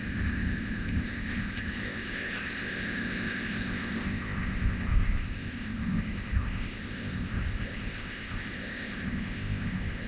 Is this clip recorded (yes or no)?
no